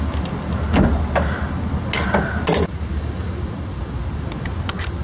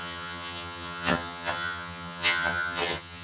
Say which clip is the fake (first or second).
second